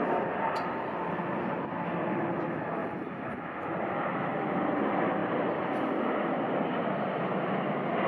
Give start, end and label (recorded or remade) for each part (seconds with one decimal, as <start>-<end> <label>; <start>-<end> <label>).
0.0-8.1 recorded